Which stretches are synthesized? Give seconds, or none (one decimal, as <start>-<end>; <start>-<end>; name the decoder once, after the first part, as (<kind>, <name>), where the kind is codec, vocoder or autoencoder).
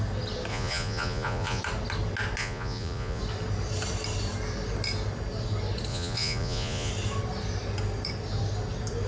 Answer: 0.5-1.6 (vocoder, Vocos); 2.4-3.2; 5.9-6.9